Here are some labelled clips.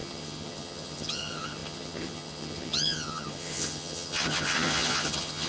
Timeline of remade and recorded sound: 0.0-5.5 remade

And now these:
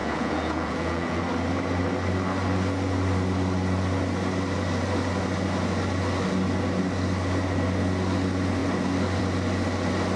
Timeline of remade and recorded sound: 0.0-1.2 remade; 1.2-10.2 recorded

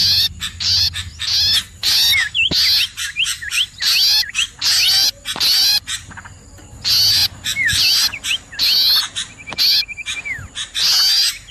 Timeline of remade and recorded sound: 0.0-11.5 recorded

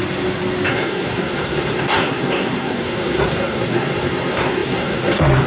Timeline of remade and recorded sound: 0.0-0.7 recorded; 0.7-5.5 remade

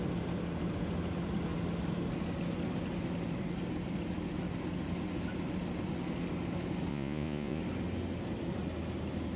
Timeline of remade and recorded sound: 0.0-6.9 recorded; 6.9-7.6 remade; 7.6-9.4 recorded